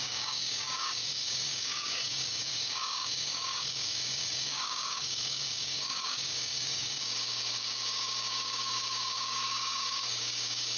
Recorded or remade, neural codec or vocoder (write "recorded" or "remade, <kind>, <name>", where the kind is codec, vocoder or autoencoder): remade, codec, DAC